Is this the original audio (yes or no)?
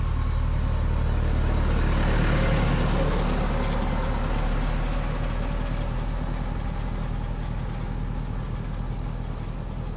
yes